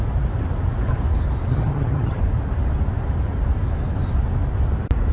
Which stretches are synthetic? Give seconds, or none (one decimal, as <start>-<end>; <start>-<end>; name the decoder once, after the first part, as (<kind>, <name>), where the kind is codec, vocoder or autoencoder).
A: 1.5-2.2 (vocoder, HiFi-GAN)